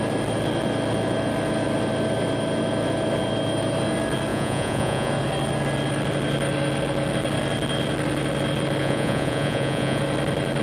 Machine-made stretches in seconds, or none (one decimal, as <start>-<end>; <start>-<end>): 4.3-5.1; 8.8-10.0